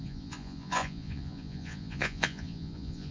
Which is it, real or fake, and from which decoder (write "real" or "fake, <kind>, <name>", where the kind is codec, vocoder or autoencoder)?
fake, vocoder, Vocos